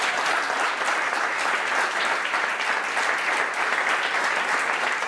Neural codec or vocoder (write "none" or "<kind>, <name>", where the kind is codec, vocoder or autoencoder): none